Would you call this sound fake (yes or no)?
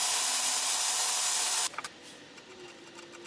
no